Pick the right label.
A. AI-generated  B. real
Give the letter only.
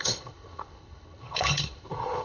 A